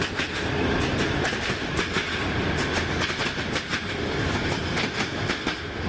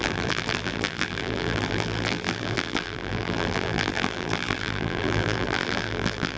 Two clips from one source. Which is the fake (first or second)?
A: second